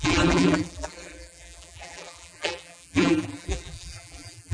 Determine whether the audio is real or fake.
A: fake